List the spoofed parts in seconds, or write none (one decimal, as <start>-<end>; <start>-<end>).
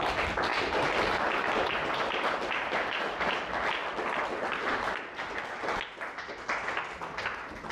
0.5-3.3